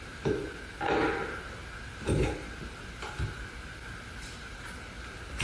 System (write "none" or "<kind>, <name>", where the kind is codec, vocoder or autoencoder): none